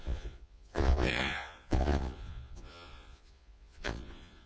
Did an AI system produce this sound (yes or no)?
yes